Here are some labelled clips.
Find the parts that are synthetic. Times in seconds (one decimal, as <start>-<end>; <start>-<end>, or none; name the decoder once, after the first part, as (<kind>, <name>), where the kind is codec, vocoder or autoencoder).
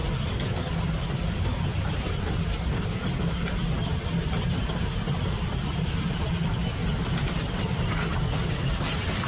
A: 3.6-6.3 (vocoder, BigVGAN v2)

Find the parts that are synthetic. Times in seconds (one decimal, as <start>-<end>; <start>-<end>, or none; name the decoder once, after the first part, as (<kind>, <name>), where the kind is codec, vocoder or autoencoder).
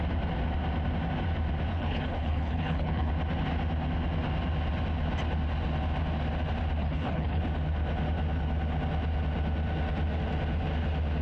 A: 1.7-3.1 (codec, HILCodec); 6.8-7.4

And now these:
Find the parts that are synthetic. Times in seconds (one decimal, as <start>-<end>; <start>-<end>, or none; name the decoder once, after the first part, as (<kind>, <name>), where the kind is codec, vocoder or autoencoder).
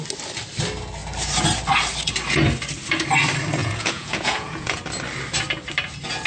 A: 3.6-4.8 (vocoder, Vocos)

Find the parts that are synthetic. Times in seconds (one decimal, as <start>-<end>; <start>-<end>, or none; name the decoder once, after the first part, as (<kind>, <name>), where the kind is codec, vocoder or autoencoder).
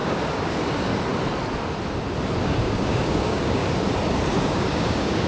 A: 0.0-0.9 (codec, DAC); 2.4-3.6; 4.3-5.3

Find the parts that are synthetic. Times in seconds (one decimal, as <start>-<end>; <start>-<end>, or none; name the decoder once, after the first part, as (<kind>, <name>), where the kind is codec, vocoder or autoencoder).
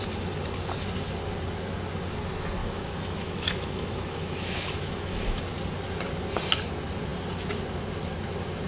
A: 2.6-5.4 (autoencoder, DAC-VAE)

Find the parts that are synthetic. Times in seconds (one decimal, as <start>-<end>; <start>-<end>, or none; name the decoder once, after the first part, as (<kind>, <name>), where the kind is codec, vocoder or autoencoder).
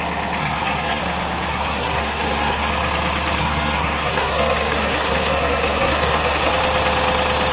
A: 0.4-1.0 (codec, SNAC); 1.5-2.7; 3.4-6.5